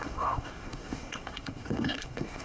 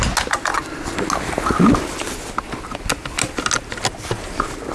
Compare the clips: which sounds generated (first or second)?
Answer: first